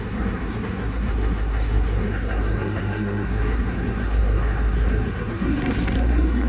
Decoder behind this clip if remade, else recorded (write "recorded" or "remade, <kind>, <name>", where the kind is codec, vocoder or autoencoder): remade, codec, SNAC